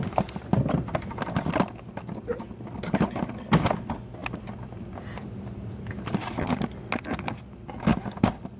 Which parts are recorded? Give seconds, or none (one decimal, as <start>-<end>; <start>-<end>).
0.0-4.2; 5.9-8.6